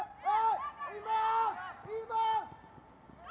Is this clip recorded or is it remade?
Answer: recorded